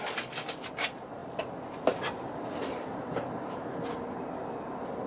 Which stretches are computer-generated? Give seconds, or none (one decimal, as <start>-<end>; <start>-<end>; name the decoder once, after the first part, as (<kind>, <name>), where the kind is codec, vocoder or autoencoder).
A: none